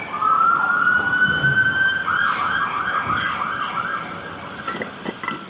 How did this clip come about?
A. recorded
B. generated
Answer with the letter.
A